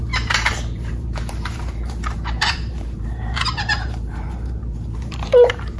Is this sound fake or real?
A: fake